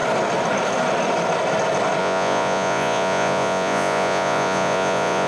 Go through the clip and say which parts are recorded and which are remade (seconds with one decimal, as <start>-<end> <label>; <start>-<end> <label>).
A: 0.0-2.0 recorded; 2.0-5.3 remade